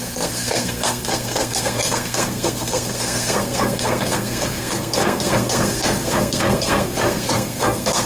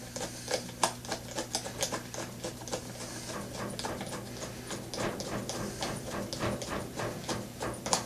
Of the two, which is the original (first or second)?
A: second